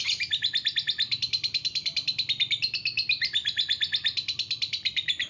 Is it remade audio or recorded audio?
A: recorded